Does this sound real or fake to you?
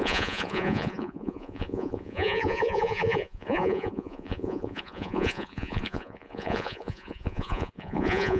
fake